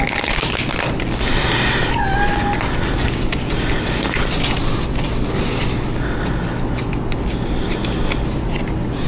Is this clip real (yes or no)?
yes